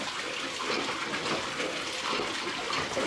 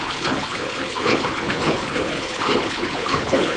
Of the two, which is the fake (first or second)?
second